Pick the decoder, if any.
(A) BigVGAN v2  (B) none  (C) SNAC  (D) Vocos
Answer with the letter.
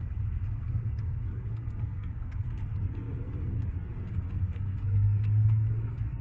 C